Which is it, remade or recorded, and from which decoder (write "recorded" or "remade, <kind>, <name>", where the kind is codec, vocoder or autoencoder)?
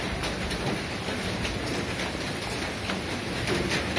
recorded